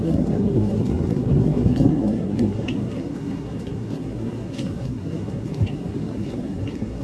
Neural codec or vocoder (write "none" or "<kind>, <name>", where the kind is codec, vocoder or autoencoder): codec, SNAC